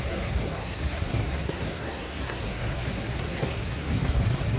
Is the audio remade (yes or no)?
yes